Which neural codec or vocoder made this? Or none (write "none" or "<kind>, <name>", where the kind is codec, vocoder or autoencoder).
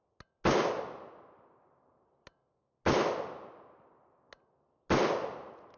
none